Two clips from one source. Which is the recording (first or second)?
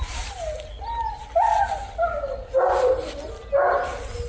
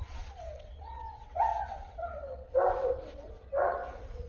first